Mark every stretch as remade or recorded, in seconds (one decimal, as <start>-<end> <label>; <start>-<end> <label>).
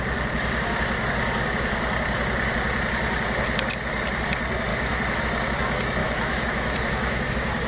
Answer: 0.0-4.7 recorded; 4.7-5.2 remade; 5.2-6.0 recorded; 6.0-7.3 remade; 7.3-7.7 recorded